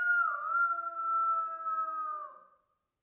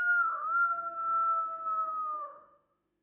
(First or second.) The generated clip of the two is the second